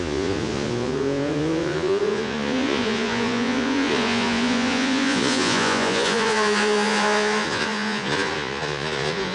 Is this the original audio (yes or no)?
no